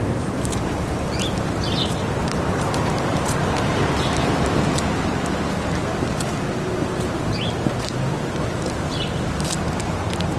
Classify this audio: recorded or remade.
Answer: remade